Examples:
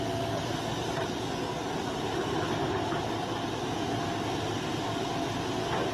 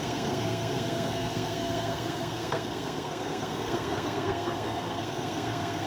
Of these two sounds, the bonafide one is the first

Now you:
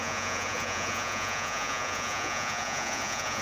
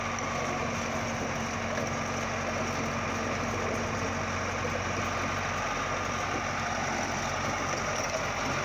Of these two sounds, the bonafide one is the second